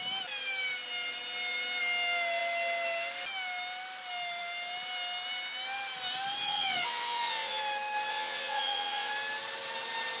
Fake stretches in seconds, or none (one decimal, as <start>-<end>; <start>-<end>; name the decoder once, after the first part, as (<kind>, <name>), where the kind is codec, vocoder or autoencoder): 6.4-7.6 (vocoder, WaveNeXt); 8.1-9.1